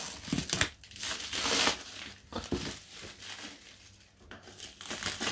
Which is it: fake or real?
real